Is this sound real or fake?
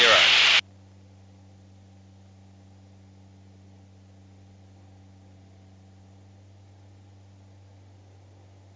real